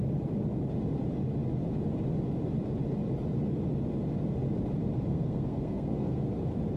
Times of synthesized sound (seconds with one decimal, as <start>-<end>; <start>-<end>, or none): 5.1-6.3